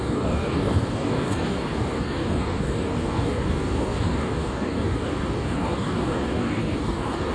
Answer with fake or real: fake